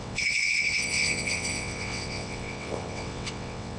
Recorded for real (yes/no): no